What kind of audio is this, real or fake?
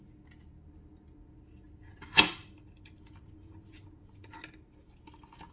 real